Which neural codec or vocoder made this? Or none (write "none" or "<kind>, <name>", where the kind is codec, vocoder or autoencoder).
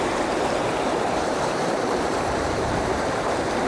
vocoder, BigVGAN v2